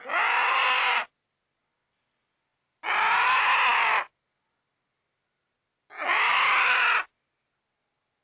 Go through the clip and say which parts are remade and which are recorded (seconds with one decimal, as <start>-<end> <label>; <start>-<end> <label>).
0.0-8.2 recorded